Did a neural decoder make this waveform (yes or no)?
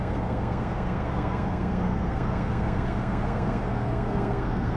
yes